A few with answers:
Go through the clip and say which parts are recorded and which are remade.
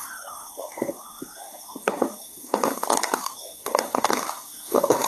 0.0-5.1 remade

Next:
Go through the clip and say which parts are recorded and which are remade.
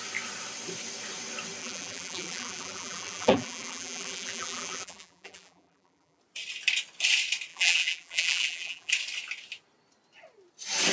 0.0-1.6 recorded; 1.6-6.2 remade; 6.2-7.5 recorded; 7.5-8.9 remade; 8.9-10.9 recorded